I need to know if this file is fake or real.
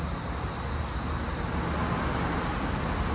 real